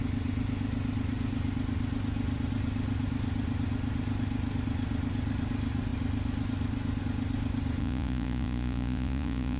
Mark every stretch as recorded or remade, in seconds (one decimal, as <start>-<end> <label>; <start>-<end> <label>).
0.0-7.8 recorded; 7.8-9.6 remade